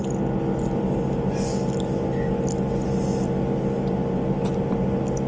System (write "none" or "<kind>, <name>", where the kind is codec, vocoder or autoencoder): none